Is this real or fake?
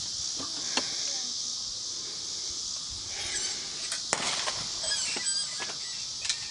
real